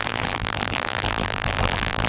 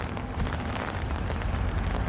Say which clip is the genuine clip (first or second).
second